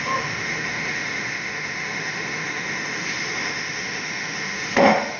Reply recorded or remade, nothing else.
remade